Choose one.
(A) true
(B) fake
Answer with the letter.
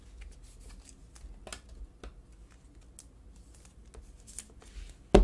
A